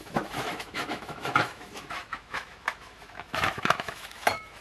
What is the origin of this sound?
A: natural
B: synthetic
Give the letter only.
B